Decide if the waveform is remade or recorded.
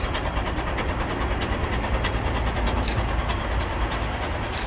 recorded